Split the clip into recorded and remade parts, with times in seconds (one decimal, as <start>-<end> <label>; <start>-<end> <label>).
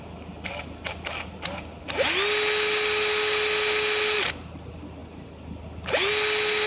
0.0-6.7 recorded